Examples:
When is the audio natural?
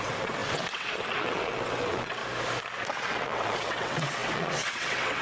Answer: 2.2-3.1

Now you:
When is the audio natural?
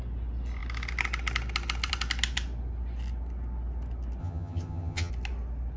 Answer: 0.0-4.2; 5.1-5.8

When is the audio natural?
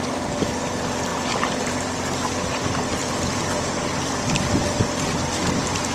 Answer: 0.0-1.1; 2.5-3.0; 3.8-5.9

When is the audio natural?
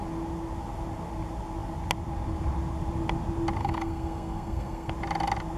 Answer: 0.0-3.6; 4.9-5.6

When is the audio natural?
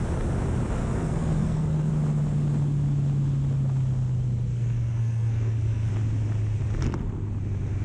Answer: 0.0-0.8; 1.9-4.5; 5.9-7.8